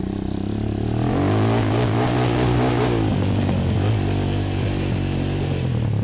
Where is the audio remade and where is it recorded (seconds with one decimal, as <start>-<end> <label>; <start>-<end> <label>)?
0.0-1.1 recorded; 1.1-3.9 remade; 3.9-6.0 recorded